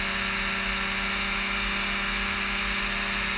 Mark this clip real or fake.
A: real